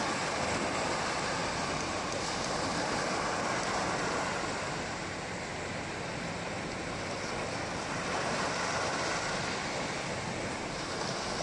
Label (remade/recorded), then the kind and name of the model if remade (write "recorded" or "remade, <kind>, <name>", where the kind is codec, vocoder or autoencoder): recorded